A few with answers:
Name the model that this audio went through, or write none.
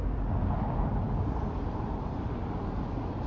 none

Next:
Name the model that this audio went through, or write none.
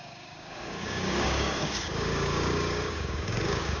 codec, DAC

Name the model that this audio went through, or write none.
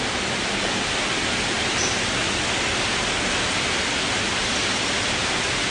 none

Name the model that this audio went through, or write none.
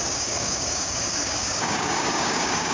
codec, DAC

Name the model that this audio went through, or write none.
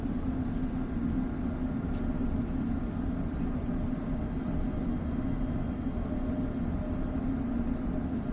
none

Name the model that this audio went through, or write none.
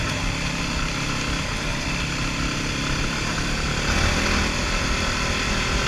none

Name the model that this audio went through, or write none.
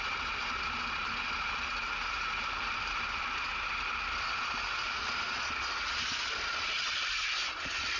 none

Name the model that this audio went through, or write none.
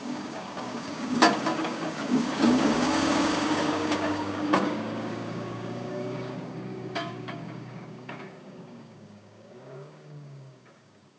codec, DAC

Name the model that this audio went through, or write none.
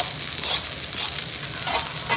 none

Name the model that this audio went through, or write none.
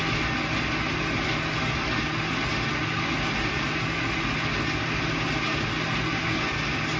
none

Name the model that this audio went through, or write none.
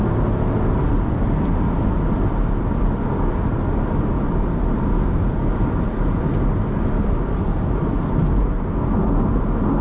none